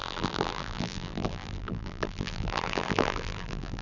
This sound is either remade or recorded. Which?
remade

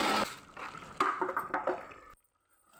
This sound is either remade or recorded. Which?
recorded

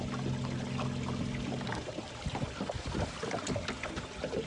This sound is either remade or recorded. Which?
recorded